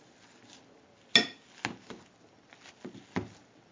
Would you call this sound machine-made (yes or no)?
no